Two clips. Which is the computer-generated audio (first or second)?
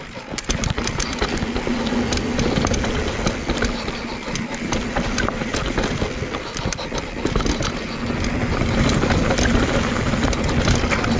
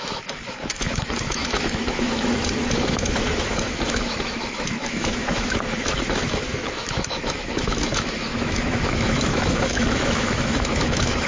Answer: second